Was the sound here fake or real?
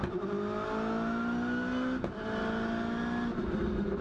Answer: real